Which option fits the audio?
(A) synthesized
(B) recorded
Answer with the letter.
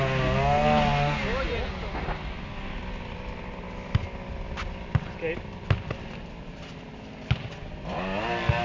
B